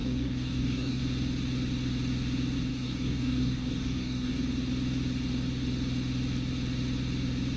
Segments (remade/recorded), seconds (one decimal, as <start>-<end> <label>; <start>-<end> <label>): 0.0-1.0 remade; 1.0-2.7 recorded; 2.7-4.3 remade; 4.3-7.6 recorded